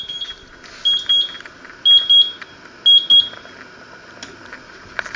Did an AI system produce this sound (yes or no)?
no